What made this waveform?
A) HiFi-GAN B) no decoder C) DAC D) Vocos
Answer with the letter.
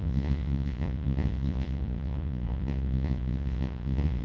D